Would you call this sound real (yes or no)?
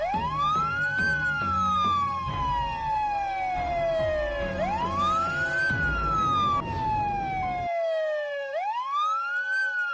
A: yes